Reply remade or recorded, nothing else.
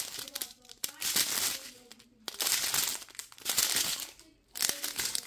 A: recorded